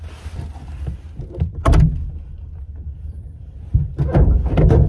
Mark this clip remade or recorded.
recorded